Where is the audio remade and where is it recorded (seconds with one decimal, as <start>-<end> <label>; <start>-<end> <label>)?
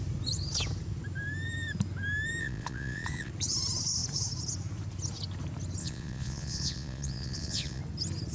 0.0-2.4 recorded; 2.4-3.3 remade; 3.3-5.8 recorded; 5.8-7.8 remade; 7.8-8.3 recorded